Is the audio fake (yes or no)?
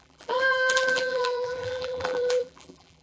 yes